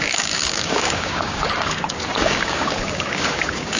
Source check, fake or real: fake